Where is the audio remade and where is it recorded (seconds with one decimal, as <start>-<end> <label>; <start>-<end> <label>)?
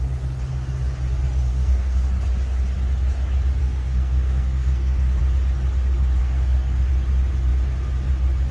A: 0.0-1.5 recorded; 1.5-2.1 remade; 2.1-3.6 recorded; 3.6-5.2 remade; 5.2-6.2 recorded; 6.2-6.9 remade; 6.9-8.5 recorded